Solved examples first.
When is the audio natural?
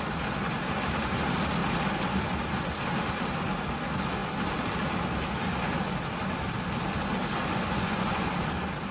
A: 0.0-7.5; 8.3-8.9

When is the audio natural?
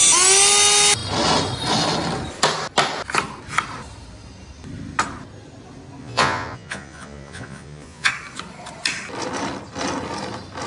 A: 0.0-6.0; 8.1-10.7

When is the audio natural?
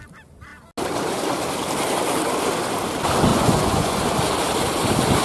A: 0.0-3.3; 4.0-5.2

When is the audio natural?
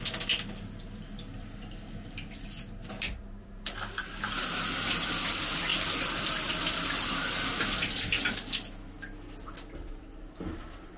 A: 0.0-11.0